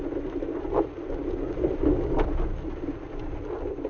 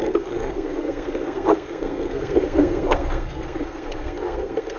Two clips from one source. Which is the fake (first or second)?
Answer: second